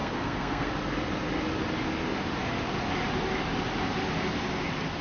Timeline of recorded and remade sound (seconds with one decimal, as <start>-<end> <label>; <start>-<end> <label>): 0.0-0.7 remade; 0.7-5.0 recorded